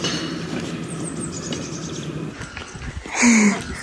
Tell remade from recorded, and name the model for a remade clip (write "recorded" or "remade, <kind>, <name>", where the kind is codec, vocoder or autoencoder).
recorded